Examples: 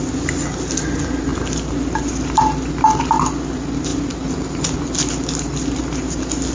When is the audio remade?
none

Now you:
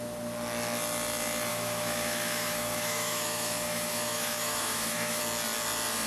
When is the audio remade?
1.5-5.2 (autoencoder, DAC-VAE)

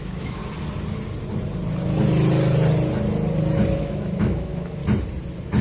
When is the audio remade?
0.0-0.4 (autoencoder, DAC-VAE); 3.8-4.8

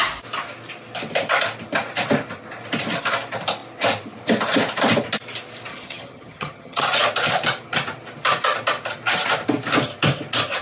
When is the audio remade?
5.7-6.8 (vocoder, HiFi-GAN)

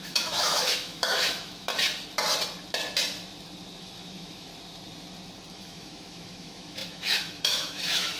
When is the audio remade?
0.0-1.7 (autoencoder, DAC-VAE); 3.8-4.5; 5.5-8.2

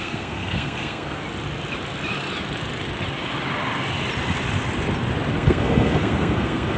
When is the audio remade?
0.0-1.2 (codec, SNAC); 5.3-6.8

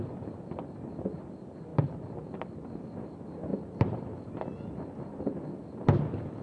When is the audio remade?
1.7-2.8 (vocoder, BigVGAN v2); 3.5-4.4